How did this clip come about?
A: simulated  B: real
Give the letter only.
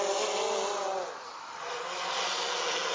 B